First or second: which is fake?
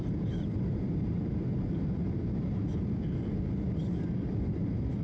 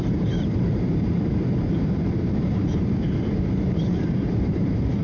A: second